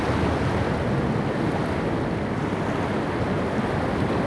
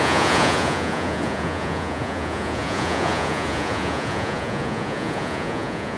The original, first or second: first